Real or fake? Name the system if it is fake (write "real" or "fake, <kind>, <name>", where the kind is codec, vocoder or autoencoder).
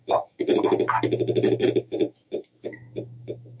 fake, autoencoder, DAC-VAE